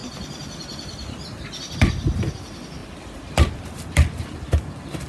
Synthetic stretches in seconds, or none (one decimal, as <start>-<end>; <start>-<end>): none